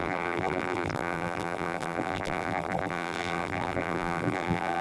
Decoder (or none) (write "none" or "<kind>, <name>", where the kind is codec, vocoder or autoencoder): vocoder, BigVGAN v2